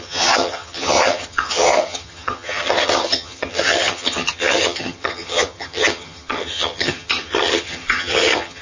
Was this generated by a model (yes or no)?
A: yes